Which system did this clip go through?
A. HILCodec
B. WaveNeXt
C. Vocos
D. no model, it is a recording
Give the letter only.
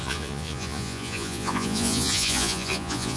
C